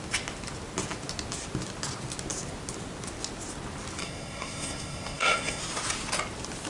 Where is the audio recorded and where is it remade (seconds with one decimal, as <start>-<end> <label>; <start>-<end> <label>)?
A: 0.0-4.0 recorded; 4.0-5.6 remade; 5.6-6.7 recorded